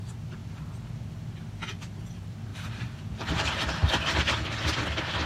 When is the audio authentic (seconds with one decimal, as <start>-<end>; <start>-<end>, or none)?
0.0-2.5; 3.9-5.3